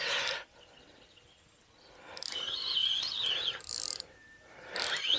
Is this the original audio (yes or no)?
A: yes